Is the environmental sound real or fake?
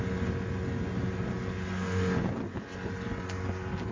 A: real